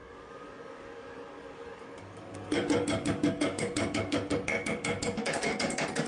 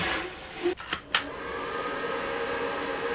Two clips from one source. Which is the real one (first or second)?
second